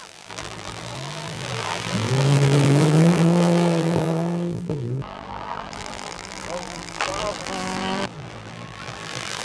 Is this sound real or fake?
fake